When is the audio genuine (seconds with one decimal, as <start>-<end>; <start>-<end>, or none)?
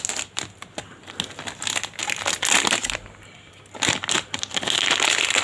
0.0-5.4